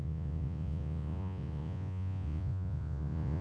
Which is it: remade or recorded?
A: remade